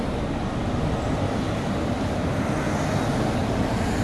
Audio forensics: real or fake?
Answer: real